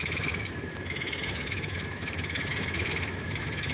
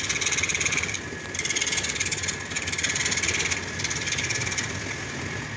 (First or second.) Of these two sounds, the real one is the second